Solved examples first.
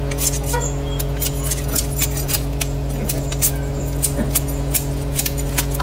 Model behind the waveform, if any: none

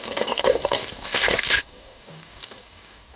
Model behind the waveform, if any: codec, DAC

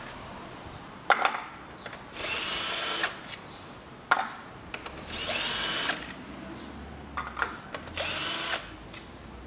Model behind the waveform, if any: none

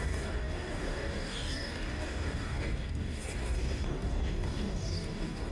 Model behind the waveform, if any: codec, DAC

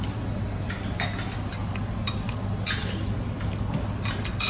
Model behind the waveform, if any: none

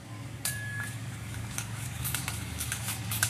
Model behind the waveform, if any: codec, DAC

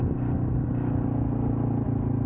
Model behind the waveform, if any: none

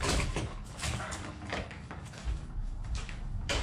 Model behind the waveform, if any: codec, DAC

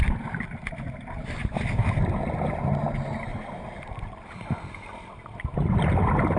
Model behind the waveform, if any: none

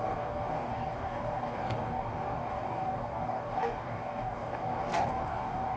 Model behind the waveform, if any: codec, DAC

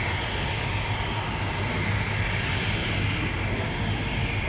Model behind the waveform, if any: none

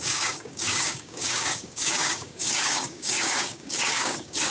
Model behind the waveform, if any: codec, DAC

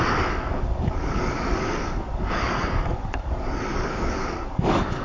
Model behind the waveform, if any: codec, DAC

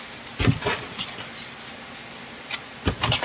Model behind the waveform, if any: none